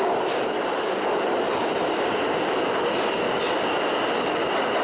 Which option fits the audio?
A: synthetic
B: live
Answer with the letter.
B